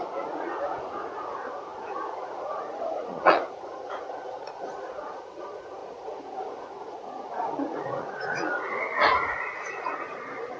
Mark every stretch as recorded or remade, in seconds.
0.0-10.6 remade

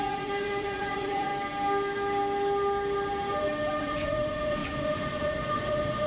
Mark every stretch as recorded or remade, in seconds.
0.0-1.3 remade; 1.3-3.8 recorded; 3.8-6.1 remade

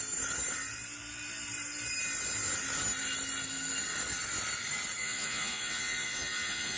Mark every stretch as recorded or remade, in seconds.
0.0-5.0 recorded; 5.0-6.8 remade

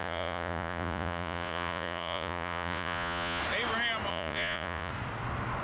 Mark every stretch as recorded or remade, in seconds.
0.0-3.4 remade; 3.4-4.1 recorded; 4.1-4.9 remade; 4.9-5.6 recorded

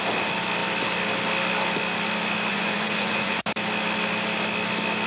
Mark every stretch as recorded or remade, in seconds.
0.0-2.5 recorded; 2.5-3.4 remade; 3.4-5.1 recorded

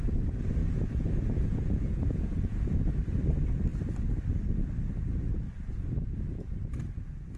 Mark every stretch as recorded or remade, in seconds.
0.0-0.6 recorded; 0.6-2.7 remade; 2.7-7.4 recorded